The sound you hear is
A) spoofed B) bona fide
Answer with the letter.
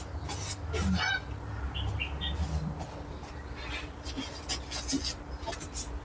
B